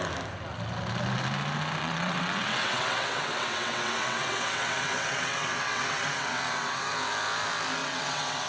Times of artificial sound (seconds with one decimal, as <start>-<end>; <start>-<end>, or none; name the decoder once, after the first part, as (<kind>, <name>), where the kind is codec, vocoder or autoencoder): 1.8-6.9 (vocoder, WaveNeXt); 7.8-8.5